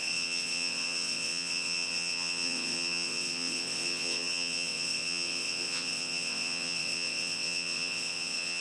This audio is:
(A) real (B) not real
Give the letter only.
B